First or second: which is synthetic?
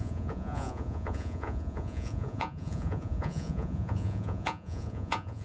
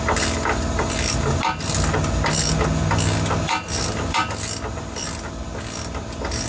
first